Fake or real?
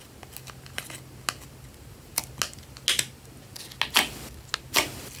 real